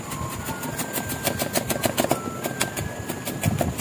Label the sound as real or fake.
real